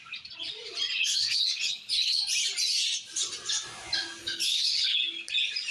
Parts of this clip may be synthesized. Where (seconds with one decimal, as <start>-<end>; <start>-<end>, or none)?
1.0-2.2; 4.2-5.0

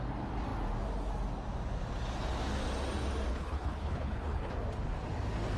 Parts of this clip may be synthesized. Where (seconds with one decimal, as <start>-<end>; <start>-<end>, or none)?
3.3-4.5

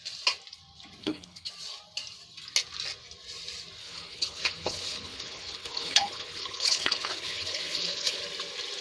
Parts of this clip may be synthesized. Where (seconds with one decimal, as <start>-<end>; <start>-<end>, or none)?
1.0-1.5; 3.8-8.2